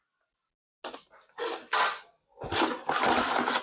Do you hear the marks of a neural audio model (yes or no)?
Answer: no